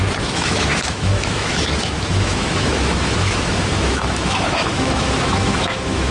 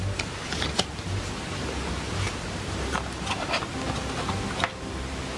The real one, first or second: second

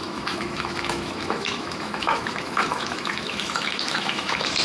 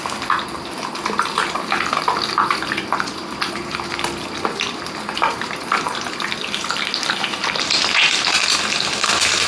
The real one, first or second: second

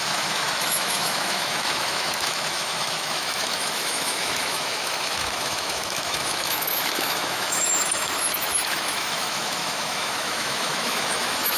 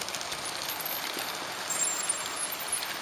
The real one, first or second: second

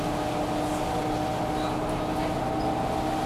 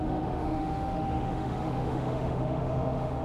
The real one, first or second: first